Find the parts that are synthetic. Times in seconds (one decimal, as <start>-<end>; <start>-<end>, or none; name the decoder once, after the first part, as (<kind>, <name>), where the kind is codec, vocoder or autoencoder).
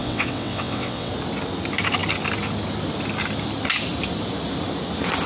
0.0-1.1 (vocoder, WaveNeXt)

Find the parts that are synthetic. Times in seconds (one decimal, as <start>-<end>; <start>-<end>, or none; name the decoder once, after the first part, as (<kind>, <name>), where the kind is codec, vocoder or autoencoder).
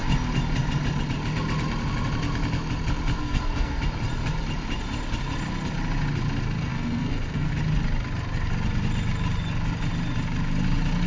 3.2-3.8 (codec, SNAC); 6.7-7.5